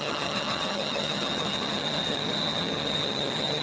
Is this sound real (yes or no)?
no